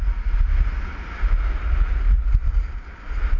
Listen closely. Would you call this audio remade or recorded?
recorded